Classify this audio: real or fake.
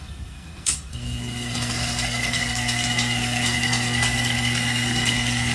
fake